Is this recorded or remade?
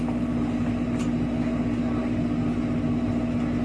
recorded